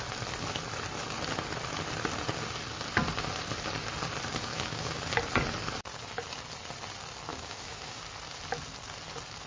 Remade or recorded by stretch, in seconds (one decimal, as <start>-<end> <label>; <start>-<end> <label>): 0.0-4.5 recorded; 4.5-5.0 remade; 5.0-7.3 recorded; 7.3-8.0 remade; 8.0-9.5 recorded